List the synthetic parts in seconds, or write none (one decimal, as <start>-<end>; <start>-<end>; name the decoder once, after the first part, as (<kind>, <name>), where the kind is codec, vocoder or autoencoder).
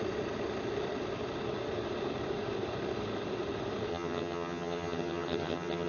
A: 3.9-5.9 (vocoder, HiFi-GAN)